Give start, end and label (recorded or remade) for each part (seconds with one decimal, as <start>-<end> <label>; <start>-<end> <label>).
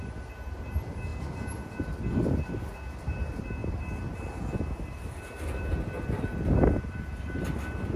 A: 0.0-8.0 recorded